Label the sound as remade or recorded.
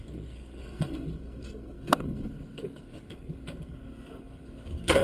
remade